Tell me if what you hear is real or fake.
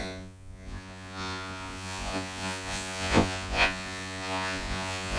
fake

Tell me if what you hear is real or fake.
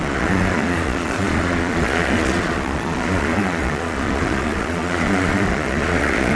fake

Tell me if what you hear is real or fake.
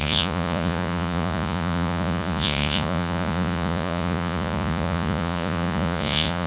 fake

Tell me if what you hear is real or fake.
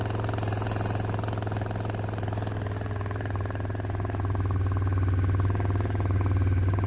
real